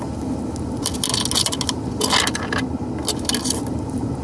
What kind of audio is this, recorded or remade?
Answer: recorded